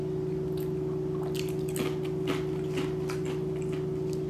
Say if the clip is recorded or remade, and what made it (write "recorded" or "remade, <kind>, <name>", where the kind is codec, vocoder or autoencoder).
recorded